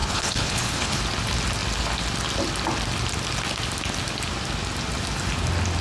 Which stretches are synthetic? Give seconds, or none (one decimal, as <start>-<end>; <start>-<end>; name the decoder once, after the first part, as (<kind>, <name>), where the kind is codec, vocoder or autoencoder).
0.0-1.0 (codec, HILCodec)